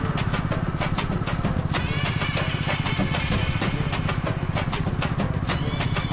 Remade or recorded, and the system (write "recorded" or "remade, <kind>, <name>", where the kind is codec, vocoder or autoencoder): recorded